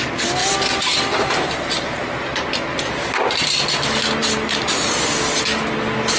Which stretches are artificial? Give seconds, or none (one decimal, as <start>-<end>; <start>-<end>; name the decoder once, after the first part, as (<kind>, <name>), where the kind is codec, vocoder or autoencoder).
0.4-2.0 (vocoder, BigVGAN v2); 4.2-5.1